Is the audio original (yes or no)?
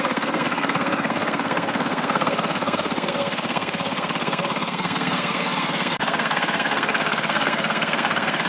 no